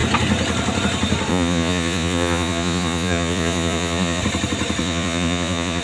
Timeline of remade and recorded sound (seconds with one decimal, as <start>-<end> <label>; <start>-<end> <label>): 0.0-1.3 recorded; 1.3-4.2 remade; 4.2-4.8 recorded; 4.8-5.8 remade